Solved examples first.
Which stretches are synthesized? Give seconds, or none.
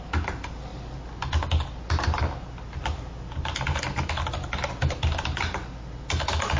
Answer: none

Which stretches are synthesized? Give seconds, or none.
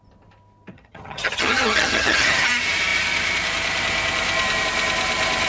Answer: 0.7-2.5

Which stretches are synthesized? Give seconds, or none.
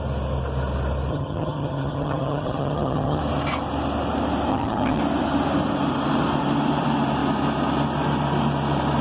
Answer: 1.1-3.2; 4.5-5.0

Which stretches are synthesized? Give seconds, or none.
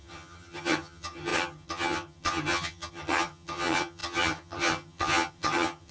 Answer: 0.0-5.9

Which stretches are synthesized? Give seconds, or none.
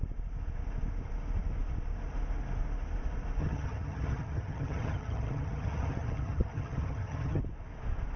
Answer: 3.4-7.4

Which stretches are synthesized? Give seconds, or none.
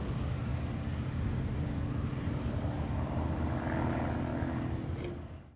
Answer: none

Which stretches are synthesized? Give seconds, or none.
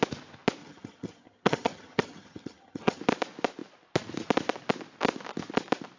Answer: 0.6-3.0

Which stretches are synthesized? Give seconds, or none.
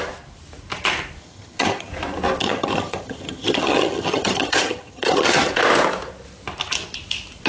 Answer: 1.2-1.9; 2.4-5.5